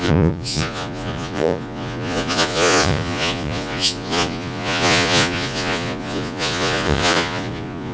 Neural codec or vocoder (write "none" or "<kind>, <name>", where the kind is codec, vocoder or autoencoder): vocoder, Vocos